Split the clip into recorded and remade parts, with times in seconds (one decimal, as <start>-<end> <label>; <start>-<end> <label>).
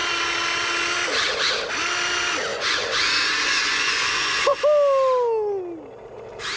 0.0-2.5 recorded; 2.5-4.6 remade; 4.6-6.6 recorded